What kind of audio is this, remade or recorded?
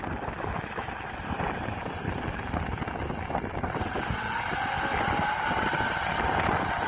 recorded